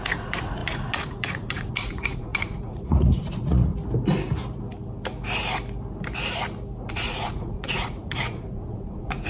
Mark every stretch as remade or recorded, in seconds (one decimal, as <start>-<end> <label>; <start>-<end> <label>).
0.0-3.7 remade; 3.7-6.9 recorded; 6.9-9.3 remade